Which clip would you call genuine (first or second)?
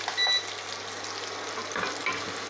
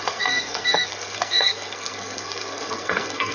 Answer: first